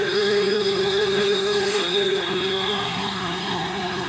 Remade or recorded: remade